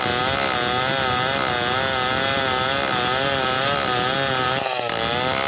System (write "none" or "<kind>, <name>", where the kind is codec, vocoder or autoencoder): none